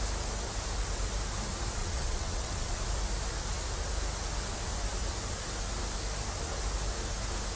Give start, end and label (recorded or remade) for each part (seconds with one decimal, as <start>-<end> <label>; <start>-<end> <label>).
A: 0.0-1.8 recorded; 1.8-2.8 remade; 2.8-7.6 recorded

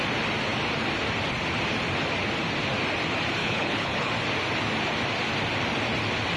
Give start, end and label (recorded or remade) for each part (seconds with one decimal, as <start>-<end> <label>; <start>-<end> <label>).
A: 0.0-3.4 recorded; 3.4-4.1 remade; 4.1-6.4 recorded